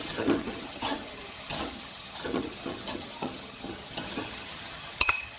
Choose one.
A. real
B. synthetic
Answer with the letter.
B